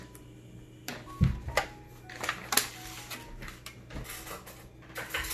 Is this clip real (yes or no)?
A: yes